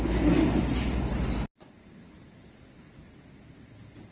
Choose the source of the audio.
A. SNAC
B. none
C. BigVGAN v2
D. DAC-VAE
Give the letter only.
B